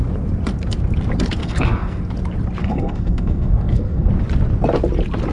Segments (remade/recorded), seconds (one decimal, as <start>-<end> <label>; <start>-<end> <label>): 0.0-1.4 recorded; 1.4-2.0 remade; 2.0-2.6 recorded; 2.6-4.1 remade; 4.1-5.3 recorded